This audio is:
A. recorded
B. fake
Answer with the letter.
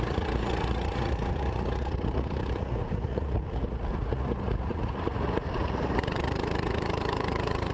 B